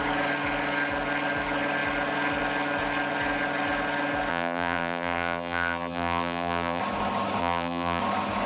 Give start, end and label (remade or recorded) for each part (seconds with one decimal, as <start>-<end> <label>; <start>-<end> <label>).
0.0-4.3 recorded; 4.3-6.8 remade; 6.8-7.4 recorded; 7.4-8.0 remade; 8.0-8.5 recorded

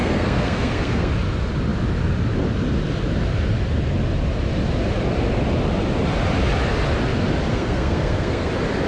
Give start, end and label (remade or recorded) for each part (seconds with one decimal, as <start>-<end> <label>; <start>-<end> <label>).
0.0-1.1 remade; 1.1-7.5 recorded; 7.5-8.5 remade; 8.5-8.9 recorded